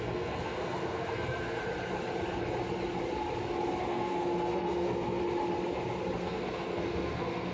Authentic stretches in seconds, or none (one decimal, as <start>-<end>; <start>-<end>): 1.6-3.8; 5.2-6.2